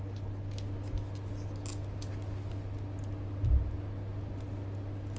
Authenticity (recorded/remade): recorded